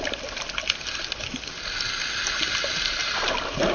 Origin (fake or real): real